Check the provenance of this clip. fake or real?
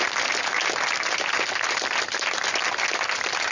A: real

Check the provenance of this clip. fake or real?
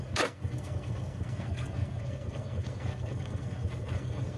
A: fake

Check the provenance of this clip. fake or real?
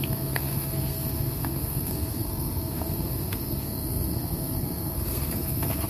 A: fake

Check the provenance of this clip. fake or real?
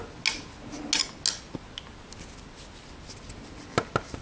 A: real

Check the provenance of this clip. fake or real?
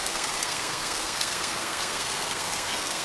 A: fake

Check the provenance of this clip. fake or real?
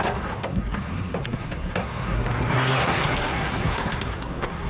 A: fake